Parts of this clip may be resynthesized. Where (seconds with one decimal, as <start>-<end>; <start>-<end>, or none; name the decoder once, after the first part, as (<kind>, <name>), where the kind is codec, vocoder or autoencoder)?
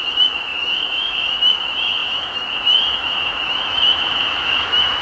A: 0.0-5.0 (autoencoder, DAC-VAE)